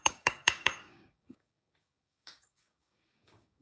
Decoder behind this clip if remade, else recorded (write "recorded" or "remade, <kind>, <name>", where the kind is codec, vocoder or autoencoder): remade, codec, DAC